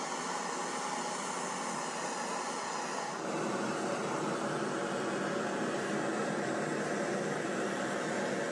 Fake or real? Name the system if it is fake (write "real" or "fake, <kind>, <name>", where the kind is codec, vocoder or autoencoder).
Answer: real